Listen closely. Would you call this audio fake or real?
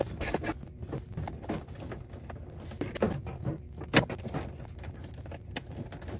real